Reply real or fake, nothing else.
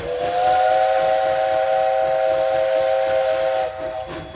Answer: real